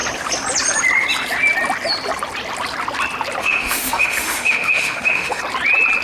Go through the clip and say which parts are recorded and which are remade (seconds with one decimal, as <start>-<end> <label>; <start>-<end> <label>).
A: 0.0-3.4 recorded; 3.4-5.4 remade; 5.4-6.0 recorded

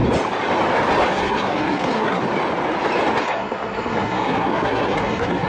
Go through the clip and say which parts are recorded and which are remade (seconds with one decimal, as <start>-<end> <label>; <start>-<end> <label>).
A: 0.0-1.1 recorded; 1.1-2.2 remade; 2.2-3.2 recorded; 3.2-5.5 remade

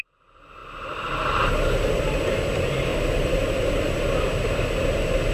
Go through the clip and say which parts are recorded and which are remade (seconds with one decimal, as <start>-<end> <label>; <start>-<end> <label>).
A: 0.0-0.6 recorded; 0.6-2.0 remade; 2.0-2.9 recorded; 2.9-4.0 remade; 4.0-5.3 recorded

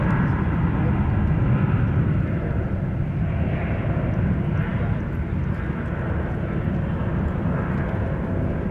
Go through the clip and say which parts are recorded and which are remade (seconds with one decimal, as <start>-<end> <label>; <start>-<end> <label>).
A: 0.0-8.7 recorded

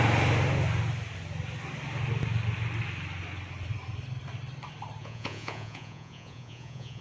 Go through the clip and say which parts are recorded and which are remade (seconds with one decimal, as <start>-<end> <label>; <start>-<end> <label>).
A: 0.0-5.0 recorded; 5.0-7.0 remade

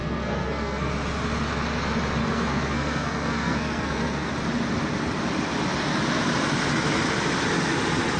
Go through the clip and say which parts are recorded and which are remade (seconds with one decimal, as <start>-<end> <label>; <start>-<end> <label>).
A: 0.0-0.9 remade; 0.9-2.2 recorded; 2.2-4.3 remade; 4.3-8.2 recorded

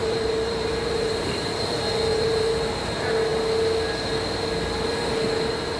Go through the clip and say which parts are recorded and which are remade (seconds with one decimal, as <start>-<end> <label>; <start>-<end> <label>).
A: 0.0-1.3 remade; 1.3-2.1 recorded; 2.1-2.9 remade; 2.9-5.8 recorded